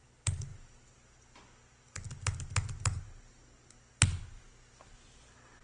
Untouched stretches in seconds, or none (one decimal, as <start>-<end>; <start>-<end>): 0.0-5.6